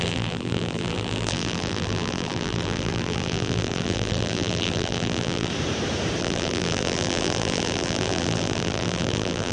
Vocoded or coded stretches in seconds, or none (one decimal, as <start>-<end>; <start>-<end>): 0.0-5.5; 6.2-9.5